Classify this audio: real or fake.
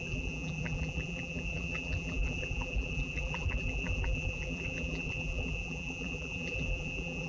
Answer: fake